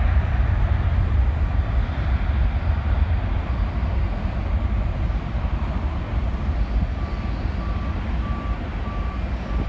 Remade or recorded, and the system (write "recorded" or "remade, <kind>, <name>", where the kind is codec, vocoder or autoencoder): recorded